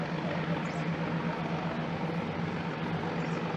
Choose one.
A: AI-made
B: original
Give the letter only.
B